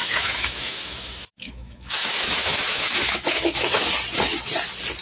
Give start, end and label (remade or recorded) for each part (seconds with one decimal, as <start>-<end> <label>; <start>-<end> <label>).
0.0-3.9 remade; 3.9-5.0 recorded